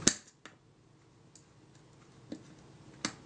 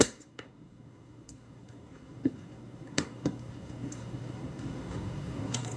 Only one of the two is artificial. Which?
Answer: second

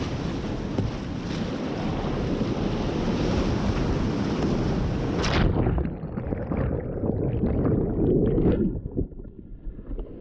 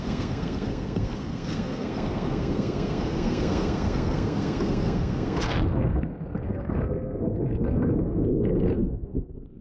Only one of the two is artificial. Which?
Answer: second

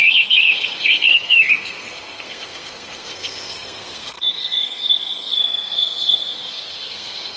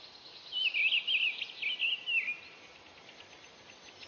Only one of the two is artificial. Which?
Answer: first